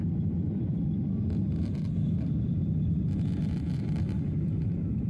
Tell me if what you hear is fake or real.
fake